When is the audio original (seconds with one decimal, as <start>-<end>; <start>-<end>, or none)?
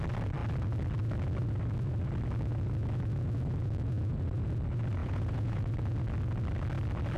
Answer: 0.0-5.0; 5.6-7.2